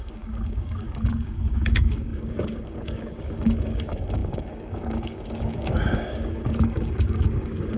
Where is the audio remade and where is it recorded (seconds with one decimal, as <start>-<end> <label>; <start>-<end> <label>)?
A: 0.0-7.8 remade